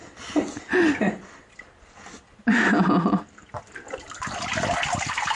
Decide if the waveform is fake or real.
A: real